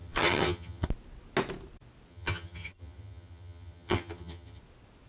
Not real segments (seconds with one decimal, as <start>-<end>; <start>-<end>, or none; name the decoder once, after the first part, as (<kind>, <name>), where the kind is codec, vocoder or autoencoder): 0.0-0.9 (vocoder, HiFi-GAN); 2.1-4.6